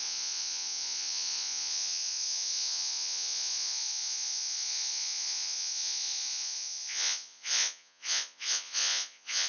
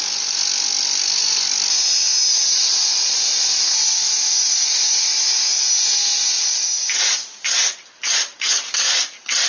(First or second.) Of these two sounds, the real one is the second